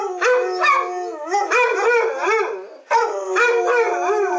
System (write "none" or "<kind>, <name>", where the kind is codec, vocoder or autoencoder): none